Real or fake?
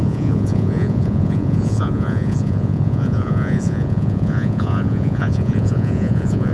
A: fake